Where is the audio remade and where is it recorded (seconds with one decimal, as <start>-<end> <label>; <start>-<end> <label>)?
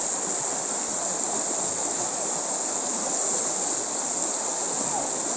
0.0-5.4 recorded